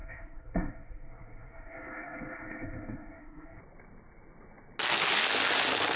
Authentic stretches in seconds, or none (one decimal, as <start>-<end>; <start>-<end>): 3.6-6.0